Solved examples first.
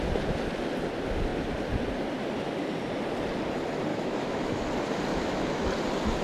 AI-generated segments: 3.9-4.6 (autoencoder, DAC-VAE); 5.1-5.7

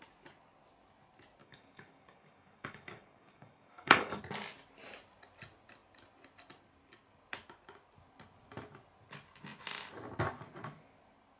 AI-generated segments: 1.4-4.2 (codec, DAC)

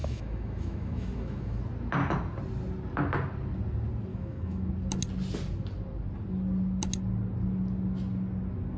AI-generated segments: 0.0-1.6 (autoencoder, DAC-VAE); 4.1-4.7

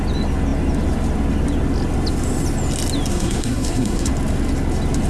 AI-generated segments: 3.1-4.1 (codec, SNAC)